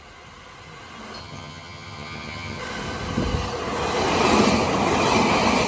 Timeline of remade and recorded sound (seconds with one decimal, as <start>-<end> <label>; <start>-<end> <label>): 0.0-1.2 recorded; 1.2-2.6 remade; 2.6-5.7 recorded